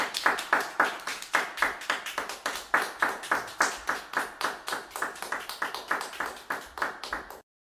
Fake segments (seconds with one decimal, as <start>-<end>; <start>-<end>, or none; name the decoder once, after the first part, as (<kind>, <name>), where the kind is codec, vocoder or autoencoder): none